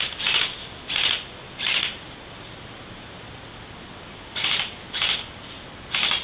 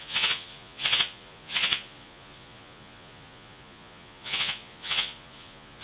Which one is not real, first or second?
second